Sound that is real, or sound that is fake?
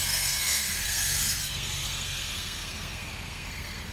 fake